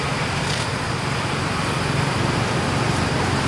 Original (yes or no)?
yes